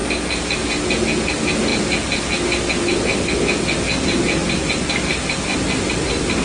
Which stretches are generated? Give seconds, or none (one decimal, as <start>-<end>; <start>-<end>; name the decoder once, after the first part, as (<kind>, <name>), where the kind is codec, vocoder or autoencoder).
none